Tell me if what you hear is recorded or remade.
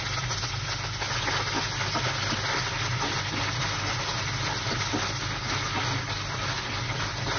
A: recorded